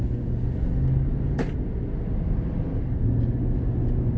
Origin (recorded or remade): recorded